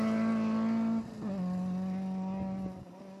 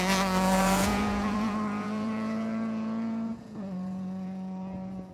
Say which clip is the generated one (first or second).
second